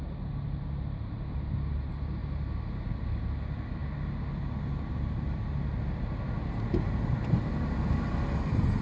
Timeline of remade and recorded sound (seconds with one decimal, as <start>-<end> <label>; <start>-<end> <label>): 0.0-8.8 recorded